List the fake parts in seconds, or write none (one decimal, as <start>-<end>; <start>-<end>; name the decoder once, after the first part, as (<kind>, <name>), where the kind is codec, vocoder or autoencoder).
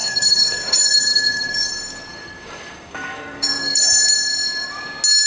0.0-1.7 (codec, DAC); 2.1-3.8